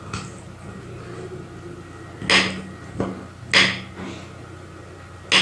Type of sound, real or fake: real